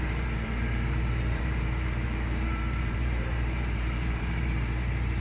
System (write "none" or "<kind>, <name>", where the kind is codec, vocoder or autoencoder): vocoder, BigVGAN v2